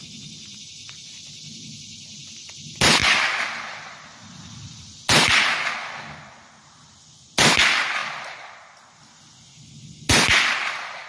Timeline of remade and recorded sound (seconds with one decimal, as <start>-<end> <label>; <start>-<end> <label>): 0.0-11.1 recorded